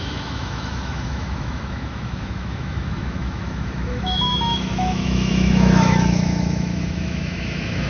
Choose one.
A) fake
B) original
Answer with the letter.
A